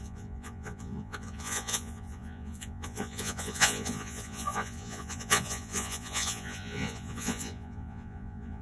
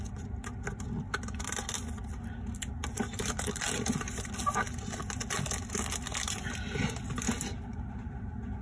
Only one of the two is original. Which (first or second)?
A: second